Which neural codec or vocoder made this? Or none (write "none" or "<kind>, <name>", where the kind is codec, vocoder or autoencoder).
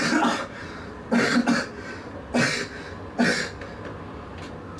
none